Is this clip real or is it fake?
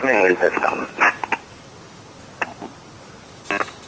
real